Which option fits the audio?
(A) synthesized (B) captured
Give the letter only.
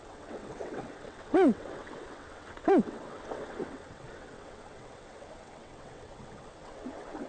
A